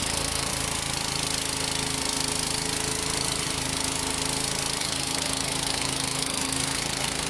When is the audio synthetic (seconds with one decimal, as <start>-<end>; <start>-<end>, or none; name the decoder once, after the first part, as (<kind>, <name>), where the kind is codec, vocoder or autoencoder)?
0.0-0.5 (codec, SNAC); 4.8-7.3